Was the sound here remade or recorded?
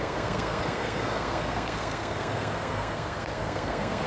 remade